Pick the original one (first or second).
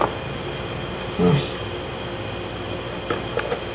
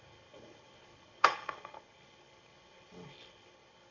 first